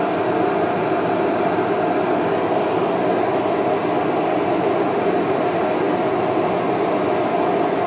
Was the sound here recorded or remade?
recorded